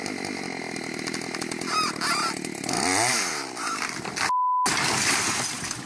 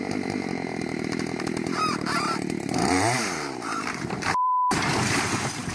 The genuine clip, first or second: first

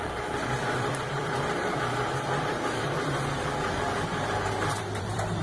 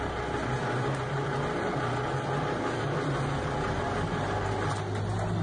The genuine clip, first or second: second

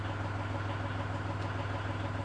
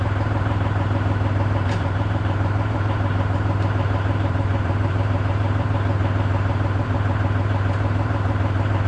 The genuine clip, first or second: first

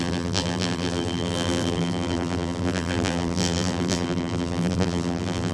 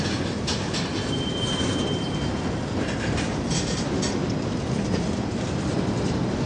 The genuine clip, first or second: second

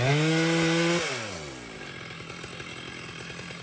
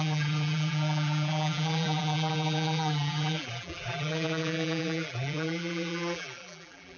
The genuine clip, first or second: first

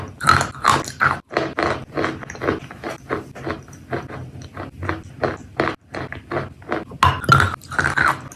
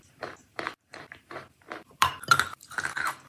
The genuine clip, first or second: first